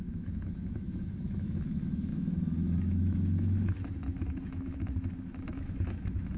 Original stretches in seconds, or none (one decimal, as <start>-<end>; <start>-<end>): none